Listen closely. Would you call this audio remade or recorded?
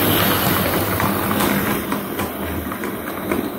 recorded